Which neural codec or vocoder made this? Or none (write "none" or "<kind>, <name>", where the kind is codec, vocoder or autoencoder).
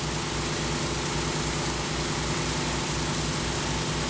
none